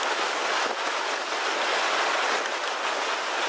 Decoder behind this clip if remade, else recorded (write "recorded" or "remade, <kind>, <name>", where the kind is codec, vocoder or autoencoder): recorded